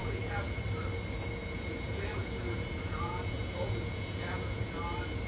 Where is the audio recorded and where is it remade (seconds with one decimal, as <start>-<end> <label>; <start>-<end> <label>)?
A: 0.0-0.6 remade; 0.6-1.4 recorded; 1.4-4.6 remade; 4.6-5.3 recorded